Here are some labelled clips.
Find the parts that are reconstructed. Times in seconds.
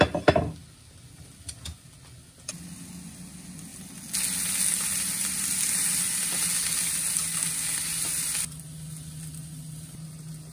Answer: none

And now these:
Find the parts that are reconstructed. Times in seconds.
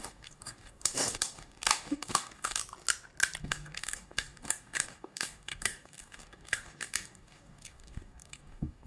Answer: 0.0-2.6 (codec, DAC); 3.4-8.9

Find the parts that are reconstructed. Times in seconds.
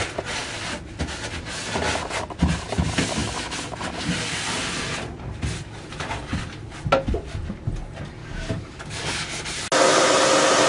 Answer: 8.2-9.4 (codec, DAC)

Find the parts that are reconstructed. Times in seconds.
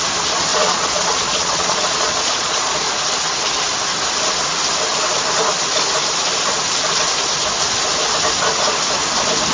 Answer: 0.5-2.7 (vocoder, Vocos)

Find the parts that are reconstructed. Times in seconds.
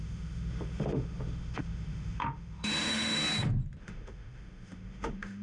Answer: 0.0-3.2 (autoencoder, DAC-VAE); 3.8-5.4